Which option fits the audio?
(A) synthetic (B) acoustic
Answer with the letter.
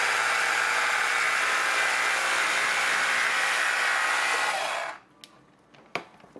B